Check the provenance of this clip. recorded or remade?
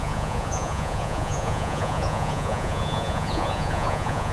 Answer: remade